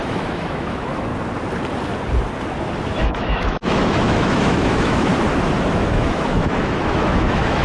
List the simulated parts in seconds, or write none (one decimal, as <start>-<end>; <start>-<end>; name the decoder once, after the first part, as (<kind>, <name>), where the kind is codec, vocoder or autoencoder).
0.0-1.1 (autoencoder, DAC-VAE); 2.9-5.1; 5.7-7.6